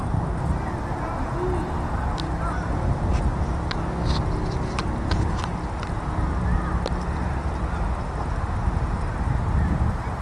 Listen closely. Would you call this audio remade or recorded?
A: recorded